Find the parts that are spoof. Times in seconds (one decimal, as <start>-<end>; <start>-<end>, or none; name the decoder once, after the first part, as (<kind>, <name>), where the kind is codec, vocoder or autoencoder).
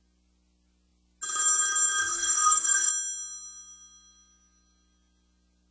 2.0-2.9 (codec, DAC)